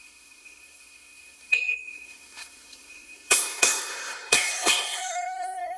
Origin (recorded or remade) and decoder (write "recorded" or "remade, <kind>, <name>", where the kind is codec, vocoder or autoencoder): remade, codec, SNAC